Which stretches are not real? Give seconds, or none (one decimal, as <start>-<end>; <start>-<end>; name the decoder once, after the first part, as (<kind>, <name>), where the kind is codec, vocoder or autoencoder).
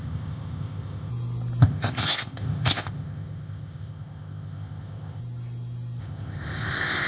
0.0-1.1 (codec, ZipCodec); 1.6-5.2; 6.0-7.1